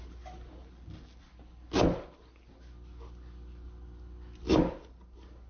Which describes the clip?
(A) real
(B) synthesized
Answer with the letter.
A